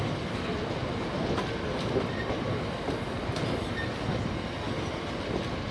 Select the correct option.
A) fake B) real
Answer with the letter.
B